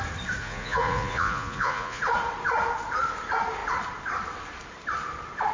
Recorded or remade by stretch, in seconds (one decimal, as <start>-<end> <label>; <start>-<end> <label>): 0.0-0.4 recorded; 0.4-2.0 remade; 2.0-5.5 recorded